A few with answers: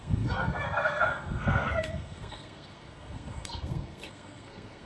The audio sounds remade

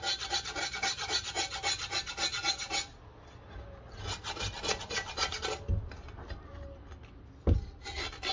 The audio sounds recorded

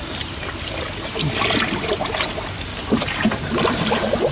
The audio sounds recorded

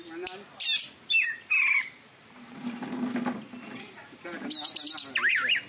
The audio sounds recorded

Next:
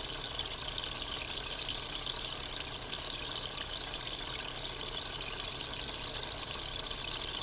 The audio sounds recorded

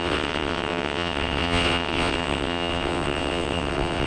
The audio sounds remade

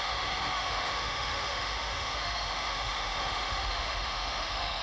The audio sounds remade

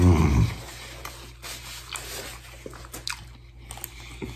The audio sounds recorded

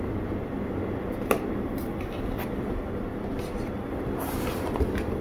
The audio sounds recorded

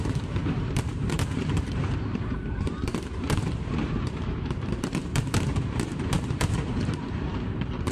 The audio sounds remade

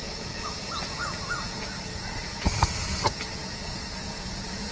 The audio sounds remade